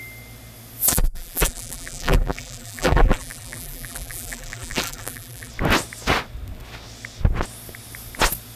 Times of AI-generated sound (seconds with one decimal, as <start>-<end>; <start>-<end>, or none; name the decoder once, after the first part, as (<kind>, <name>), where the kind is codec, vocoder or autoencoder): 0.9-5.5 (vocoder, BigVGAN v2)